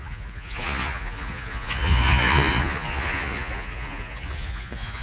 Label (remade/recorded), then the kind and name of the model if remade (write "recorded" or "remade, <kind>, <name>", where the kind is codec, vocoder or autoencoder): remade, vocoder, Vocos